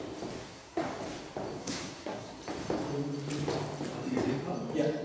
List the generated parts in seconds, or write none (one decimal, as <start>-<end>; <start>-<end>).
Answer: 0.4-0.9; 1.6-2.4